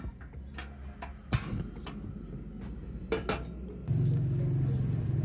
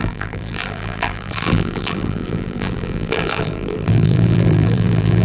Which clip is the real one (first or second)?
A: first